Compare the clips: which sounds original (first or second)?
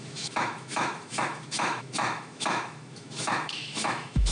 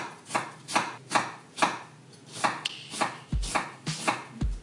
second